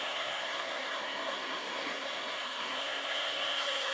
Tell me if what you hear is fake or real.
fake